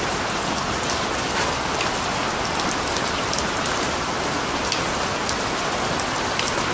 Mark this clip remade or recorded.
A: recorded